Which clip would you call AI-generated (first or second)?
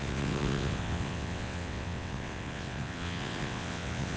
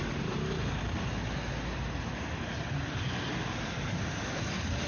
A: first